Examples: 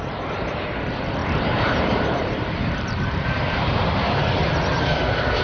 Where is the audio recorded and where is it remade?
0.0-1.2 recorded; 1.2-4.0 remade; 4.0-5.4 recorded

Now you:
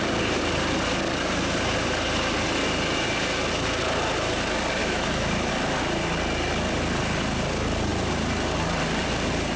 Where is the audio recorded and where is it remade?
0.0-4.8 recorded; 4.8-5.5 remade; 5.5-9.6 recorded

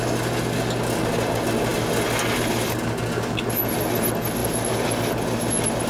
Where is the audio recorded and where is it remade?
0.0-5.9 recorded